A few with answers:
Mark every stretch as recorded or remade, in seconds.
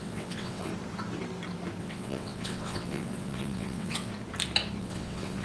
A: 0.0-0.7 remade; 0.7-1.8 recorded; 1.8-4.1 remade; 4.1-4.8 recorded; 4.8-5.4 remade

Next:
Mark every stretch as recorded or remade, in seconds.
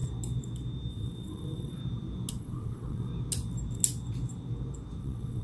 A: 0.0-0.9 recorded; 0.9-1.8 remade; 1.8-2.3 recorded; 2.3-3.1 remade; 3.1-5.0 recorded; 5.0-5.4 remade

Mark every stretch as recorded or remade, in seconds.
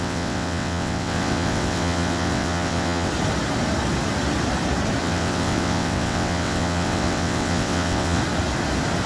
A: 0.0-3.1 remade; 3.1-5.0 recorded; 5.0-8.2 remade; 8.2-9.1 recorded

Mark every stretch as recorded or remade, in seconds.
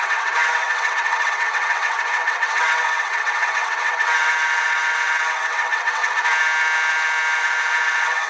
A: 0.0-6.0 remade; 6.0-7.4 recorded; 7.4-8.3 remade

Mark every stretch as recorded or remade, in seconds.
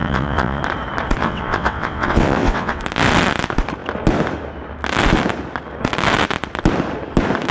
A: 0.0-0.6 remade; 0.6-1.2 recorded; 1.2-2.8 remade; 2.8-7.5 recorded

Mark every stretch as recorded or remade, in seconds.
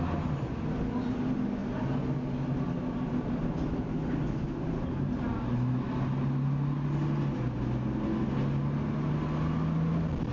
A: 0.0-10.3 recorded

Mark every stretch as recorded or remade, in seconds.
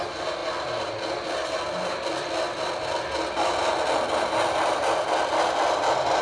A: 0.0-6.2 recorded